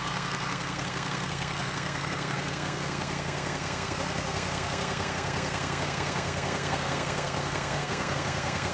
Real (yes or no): no